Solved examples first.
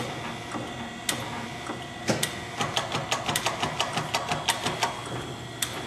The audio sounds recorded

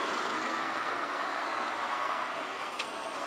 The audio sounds remade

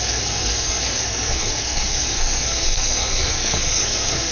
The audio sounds remade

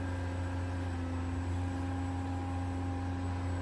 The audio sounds recorded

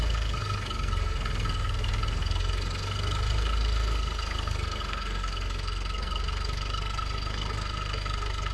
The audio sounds remade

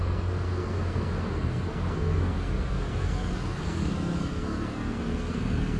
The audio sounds remade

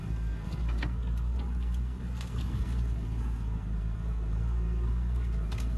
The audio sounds remade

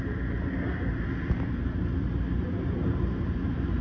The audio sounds recorded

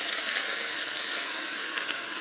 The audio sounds remade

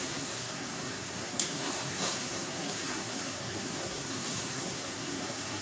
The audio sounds remade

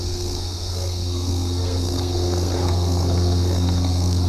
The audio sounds remade